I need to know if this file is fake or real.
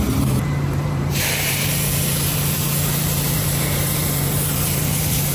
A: fake